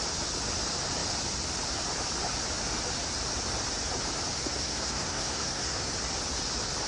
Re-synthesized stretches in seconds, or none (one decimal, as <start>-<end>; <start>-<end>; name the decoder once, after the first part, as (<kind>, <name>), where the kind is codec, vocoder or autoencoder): 4.5-5.9 (codec, SNAC)

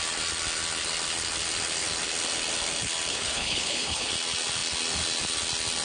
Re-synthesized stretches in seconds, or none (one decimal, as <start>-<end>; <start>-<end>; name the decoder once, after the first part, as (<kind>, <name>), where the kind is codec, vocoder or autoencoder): 3.1-4.1 (codec, HILCodec)

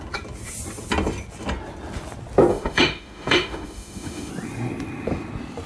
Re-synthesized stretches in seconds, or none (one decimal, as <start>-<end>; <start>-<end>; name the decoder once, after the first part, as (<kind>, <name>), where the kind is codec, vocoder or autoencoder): 2.5-4.3 (autoencoder, DAC-VAE)